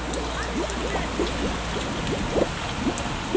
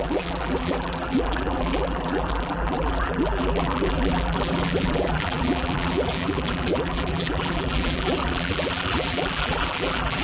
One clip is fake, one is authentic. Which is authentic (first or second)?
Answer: first